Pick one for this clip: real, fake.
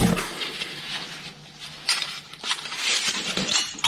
real